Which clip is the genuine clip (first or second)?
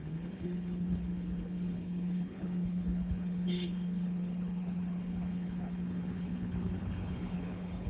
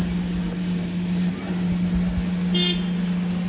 second